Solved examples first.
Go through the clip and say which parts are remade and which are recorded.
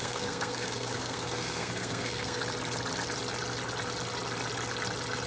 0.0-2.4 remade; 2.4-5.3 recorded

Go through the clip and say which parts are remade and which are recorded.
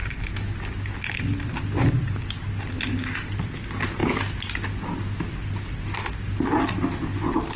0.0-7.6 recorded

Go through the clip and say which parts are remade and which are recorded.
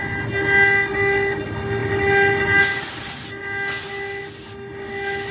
0.0-5.3 recorded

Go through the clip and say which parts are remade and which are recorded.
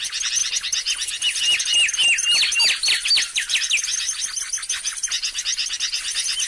0.0-6.5 recorded